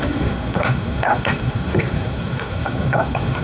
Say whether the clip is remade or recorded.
remade